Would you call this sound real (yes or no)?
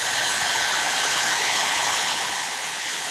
no